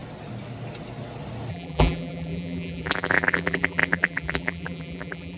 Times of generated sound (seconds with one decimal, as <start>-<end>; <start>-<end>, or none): 1.5-5.4